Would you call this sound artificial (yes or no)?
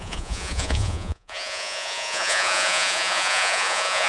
yes